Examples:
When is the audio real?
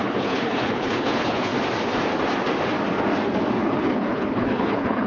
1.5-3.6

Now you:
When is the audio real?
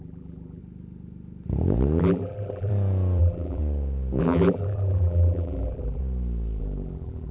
0.6-2.0; 2.7-3.2; 3.6-4.2; 6.0-6.6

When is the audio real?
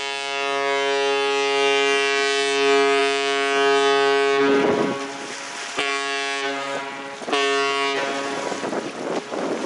0.0-9.7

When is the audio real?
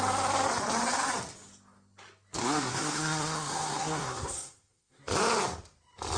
0.0-2.4; 5.0-6.2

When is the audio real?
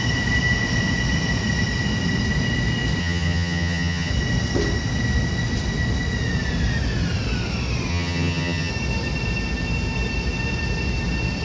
0.0-3.0; 4.1-7.9; 8.7-11.4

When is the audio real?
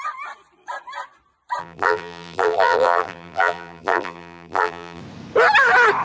0.0-1.6; 5.0-6.0